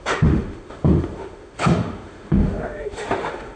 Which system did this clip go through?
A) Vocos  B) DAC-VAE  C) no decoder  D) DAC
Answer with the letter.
B